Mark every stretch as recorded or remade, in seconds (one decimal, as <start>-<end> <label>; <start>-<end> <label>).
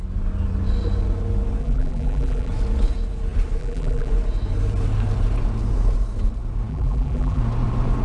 0.0-1.6 recorded; 1.6-2.5 remade; 2.5-3.6 recorded; 3.6-4.1 remade; 4.1-6.7 recorded; 6.7-7.4 remade; 7.4-8.0 recorded